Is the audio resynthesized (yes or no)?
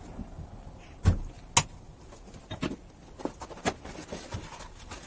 no